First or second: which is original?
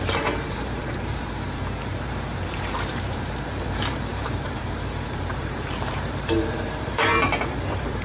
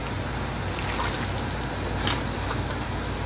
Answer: second